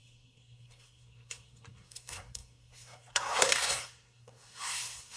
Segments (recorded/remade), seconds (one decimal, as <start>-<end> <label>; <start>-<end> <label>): 0.0-5.2 remade